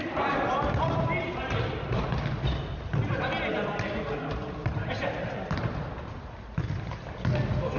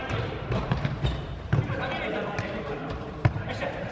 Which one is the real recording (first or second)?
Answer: first